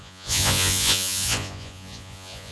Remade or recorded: remade